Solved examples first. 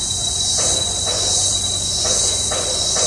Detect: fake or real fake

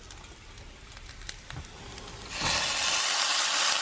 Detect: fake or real real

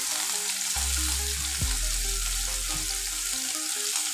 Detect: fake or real real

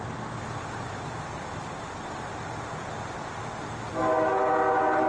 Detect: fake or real real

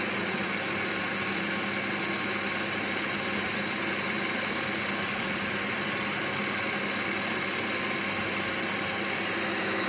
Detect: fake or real real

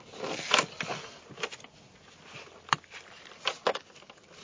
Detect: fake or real real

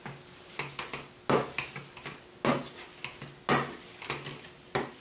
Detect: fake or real real